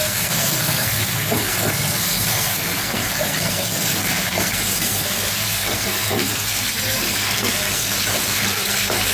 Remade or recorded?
remade